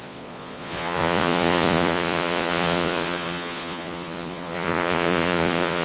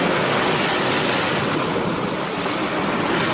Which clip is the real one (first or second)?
second